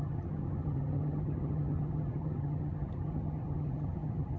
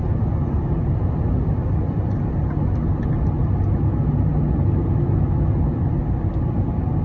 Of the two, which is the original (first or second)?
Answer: second